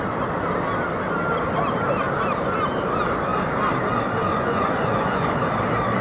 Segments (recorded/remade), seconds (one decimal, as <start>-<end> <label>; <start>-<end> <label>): 0.0-4.3 recorded; 4.3-5.4 remade; 5.4-6.0 recorded

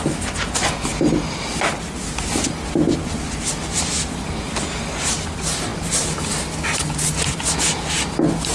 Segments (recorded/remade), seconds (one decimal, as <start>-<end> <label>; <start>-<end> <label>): 0.0-8.5 recorded

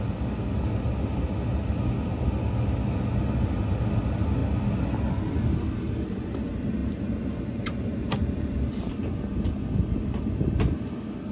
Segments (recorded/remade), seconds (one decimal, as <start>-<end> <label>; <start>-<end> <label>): 0.0-6.8 recorded; 6.8-8.9 remade; 8.9-11.3 recorded

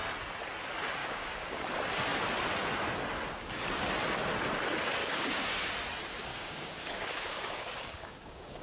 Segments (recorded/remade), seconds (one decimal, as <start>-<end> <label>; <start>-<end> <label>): 0.0-1.0 recorded; 1.0-1.6 remade; 1.6-5.0 recorded; 5.0-5.7 remade; 5.7-6.3 recorded; 6.3-8.6 remade

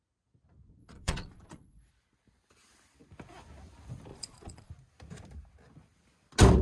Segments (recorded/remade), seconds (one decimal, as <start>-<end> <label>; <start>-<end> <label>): 0.0-0.8 recorded; 0.8-1.9 remade; 1.9-4.1 recorded; 4.1-4.7 remade; 4.7-6.6 recorded

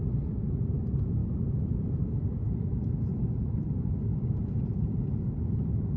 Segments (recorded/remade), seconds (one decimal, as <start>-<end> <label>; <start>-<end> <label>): 0.0-6.0 recorded

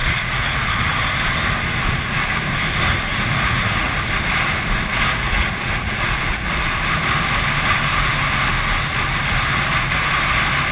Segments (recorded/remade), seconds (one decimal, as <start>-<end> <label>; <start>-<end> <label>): 0.0-0.7 remade; 0.7-3.1 recorded; 3.1-4.0 remade; 4.0-5.1 recorded; 5.1-6.8 remade; 6.8-10.7 recorded